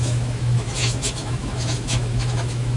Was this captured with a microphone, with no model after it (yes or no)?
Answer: no